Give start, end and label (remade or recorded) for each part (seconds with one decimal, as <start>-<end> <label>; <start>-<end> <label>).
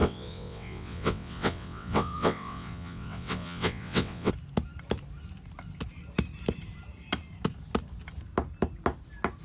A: 0.0-4.3 remade; 4.3-9.4 recorded